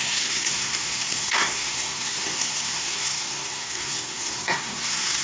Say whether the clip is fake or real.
fake